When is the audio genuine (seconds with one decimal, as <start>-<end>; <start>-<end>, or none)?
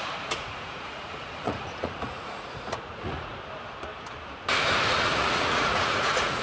3.3-4.9